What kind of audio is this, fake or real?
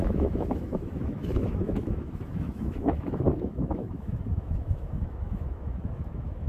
fake